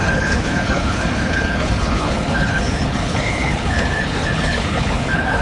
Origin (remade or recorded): remade